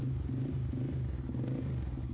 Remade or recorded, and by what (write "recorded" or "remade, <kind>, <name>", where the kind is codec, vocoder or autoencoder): recorded